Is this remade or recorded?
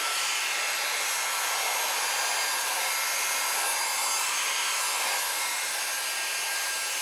recorded